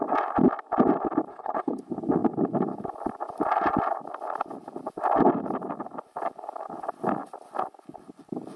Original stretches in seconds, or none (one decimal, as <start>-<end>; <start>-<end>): 0.0-1.3; 1.8-8.6